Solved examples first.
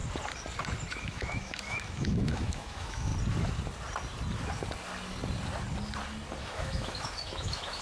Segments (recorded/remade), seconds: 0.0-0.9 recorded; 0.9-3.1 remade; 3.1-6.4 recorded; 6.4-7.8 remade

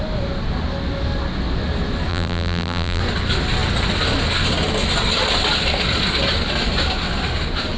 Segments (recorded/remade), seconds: 0.0-2.1 recorded; 2.1-3.0 remade; 3.0-7.8 recorded

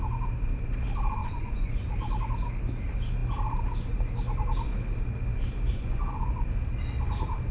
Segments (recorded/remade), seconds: 0.0-1.2 recorded; 1.2-1.8 remade; 1.8-5.7 recorded; 5.7-6.3 remade; 6.3-7.5 recorded